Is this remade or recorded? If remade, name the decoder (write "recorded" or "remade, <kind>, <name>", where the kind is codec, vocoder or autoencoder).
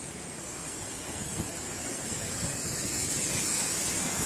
remade, codec, SNAC